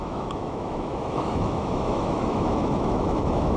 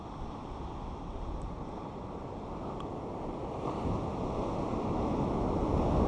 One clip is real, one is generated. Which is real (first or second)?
second